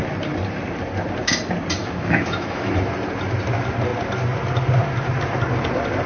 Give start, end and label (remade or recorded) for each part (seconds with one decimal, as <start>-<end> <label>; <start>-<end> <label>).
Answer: 0.0-1.8 recorded; 1.8-2.7 remade; 2.7-6.1 recorded